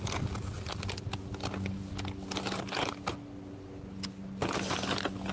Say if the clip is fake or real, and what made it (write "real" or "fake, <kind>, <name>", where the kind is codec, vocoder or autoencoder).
real